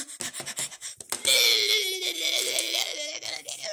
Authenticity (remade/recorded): recorded